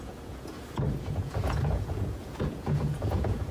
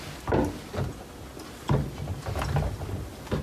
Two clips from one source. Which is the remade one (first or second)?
first